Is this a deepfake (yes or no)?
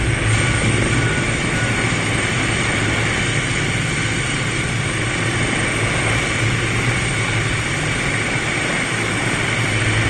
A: no